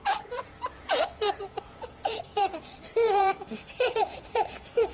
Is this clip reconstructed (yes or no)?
yes